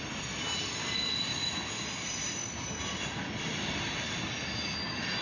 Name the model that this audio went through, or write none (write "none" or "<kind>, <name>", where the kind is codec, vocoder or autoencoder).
none